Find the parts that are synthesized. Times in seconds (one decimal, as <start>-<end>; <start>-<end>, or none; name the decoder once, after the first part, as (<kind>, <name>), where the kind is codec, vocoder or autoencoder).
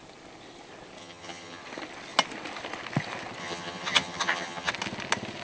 1.0-1.6 (vocoder, HiFi-GAN); 3.4-4.7